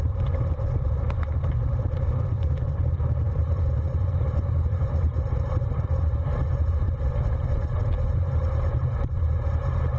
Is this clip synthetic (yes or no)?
yes